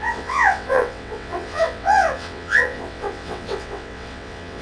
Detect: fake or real fake